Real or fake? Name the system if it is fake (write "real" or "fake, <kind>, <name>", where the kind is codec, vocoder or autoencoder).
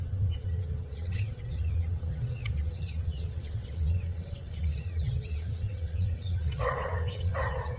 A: fake, vocoder, WaveNeXt